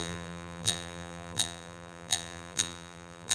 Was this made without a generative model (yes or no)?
no